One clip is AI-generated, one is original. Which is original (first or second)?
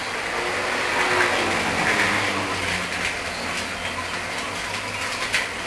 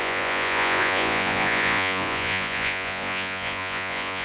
first